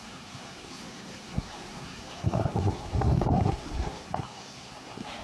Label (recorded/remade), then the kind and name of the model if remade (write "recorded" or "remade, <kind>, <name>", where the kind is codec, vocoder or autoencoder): remade, codec, SNAC